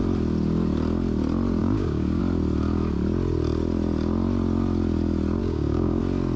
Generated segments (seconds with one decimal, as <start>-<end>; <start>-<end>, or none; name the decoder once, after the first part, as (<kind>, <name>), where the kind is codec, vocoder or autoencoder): 1.6-2.2 (codec, DAC); 5.4-6.0